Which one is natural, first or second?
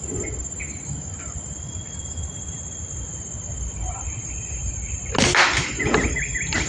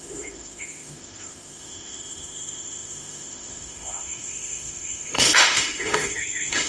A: first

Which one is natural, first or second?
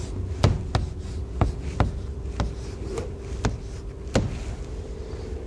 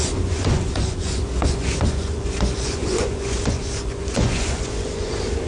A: first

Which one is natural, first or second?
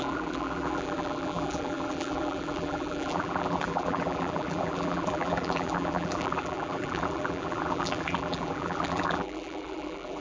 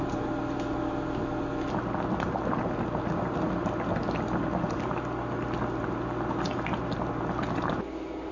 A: second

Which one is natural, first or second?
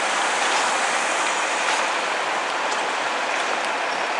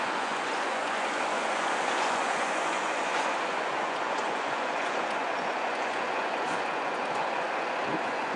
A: first